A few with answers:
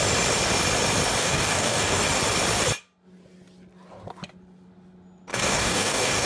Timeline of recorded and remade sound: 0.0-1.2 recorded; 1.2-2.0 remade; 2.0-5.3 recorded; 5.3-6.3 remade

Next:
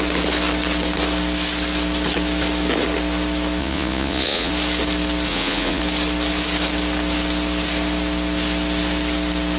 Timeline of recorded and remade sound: 0.0-3.6 recorded; 3.6-4.5 remade; 4.5-5.3 recorded; 5.3-5.8 remade; 5.8-9.6 recorded